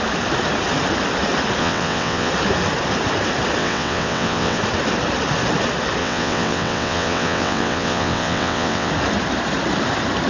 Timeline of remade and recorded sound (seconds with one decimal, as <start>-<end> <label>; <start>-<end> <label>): 0.0-1.6 recorded; 1.6-2.3 remade; 2.3-3.6 recorded; 3.6-4.6 remade; 4.6-6.0 recorded; 6.0-8.9 remade; 8.9-10.3 recorded